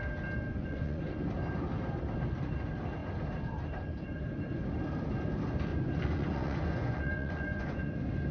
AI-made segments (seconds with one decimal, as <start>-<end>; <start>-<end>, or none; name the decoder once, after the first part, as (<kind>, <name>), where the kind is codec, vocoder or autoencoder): 0.5-1.1 (vocoder, Vocos); 5.7-7.8